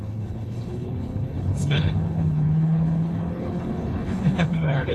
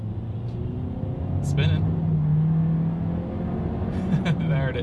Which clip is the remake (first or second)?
first